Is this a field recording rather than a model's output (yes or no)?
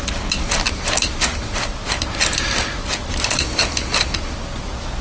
yes